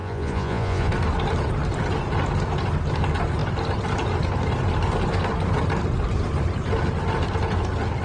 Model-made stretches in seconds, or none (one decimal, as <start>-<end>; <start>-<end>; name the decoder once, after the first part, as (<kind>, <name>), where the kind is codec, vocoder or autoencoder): 0.0-0.9 (vocoder, Vocos)